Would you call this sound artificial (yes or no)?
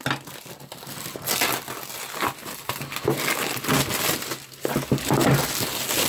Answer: no